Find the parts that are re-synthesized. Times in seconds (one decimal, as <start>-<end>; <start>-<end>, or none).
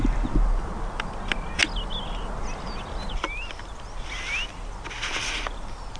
none